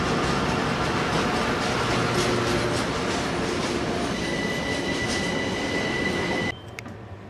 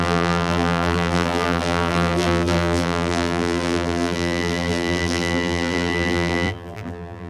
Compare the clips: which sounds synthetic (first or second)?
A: second